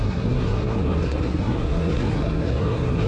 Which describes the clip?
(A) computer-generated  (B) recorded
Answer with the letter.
A